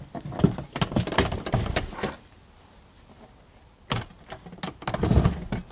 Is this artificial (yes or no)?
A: no